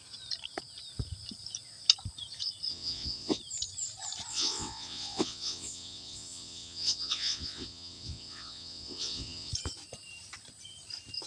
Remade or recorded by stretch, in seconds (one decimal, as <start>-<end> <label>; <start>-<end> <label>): 0.0-2.7 recorded; 2.7-3.4 remade; 3.4-4.3 recorded; 4.3-9.5 remade; 9.5-11.3 recorded